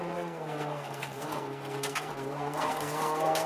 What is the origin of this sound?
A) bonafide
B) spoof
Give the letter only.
B